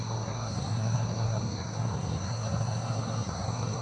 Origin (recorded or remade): remade